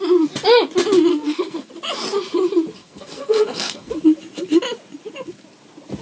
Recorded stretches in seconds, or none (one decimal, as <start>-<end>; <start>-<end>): 0.0-1.1; 1.7-2.8; 3.9-6.0